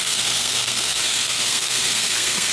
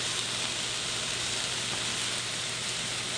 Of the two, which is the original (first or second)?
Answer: second